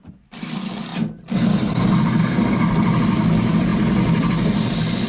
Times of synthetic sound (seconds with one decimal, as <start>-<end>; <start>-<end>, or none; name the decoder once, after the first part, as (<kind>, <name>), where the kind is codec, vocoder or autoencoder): none

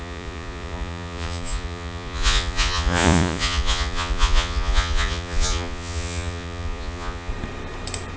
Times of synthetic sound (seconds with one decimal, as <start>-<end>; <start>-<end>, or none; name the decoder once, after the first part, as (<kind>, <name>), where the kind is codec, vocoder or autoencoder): 0.0-7.3 (vocoder, Vocos)

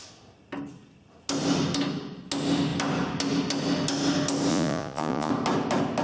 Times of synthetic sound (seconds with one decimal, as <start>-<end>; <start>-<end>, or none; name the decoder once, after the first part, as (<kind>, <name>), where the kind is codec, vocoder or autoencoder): 4.5-5.3 (vocoder, Vocos)

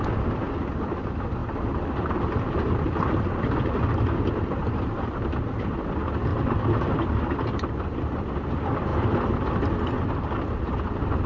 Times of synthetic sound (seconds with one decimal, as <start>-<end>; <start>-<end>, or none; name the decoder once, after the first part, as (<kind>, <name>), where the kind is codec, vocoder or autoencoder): none

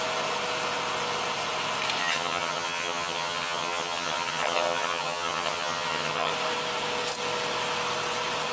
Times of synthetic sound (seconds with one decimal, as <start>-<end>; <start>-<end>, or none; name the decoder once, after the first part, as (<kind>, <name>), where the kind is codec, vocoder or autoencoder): 2.0-6.3 (vocoder, HiFi-GAN)

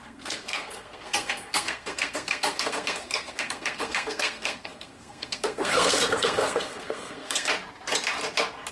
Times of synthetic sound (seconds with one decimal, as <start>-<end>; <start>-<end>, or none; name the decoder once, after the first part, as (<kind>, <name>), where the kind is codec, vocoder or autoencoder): 0.0-7.5 (codec, SNAC)